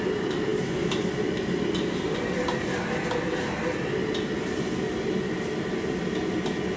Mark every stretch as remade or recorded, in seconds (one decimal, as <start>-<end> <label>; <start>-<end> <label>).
0.0-6.8 recorded